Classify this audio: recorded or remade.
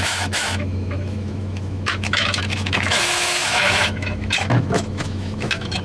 remade